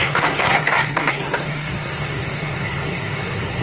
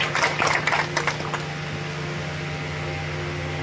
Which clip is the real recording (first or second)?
second